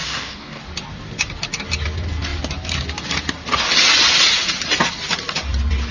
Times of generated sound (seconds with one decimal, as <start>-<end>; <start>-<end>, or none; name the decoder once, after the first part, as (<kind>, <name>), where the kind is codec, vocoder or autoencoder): 0.0-0.6 (codec, DAC)